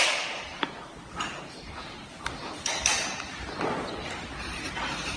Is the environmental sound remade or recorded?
recorded